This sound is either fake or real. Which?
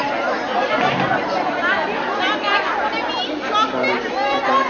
real